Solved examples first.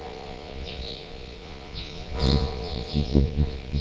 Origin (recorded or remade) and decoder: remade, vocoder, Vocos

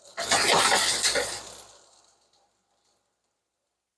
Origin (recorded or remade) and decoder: recorded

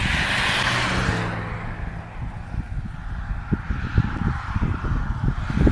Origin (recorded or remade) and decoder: recorded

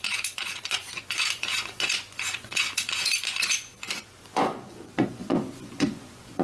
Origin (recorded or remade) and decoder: remade, vocoder, Vocos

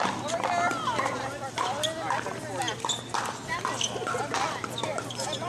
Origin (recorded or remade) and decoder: recorded